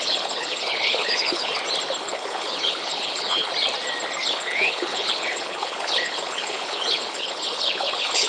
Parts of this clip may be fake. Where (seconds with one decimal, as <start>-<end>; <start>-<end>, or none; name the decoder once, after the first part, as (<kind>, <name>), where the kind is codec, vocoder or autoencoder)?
0.0-1.5 (codec, HILCodec); 2.0-3.5; 4.2-8.3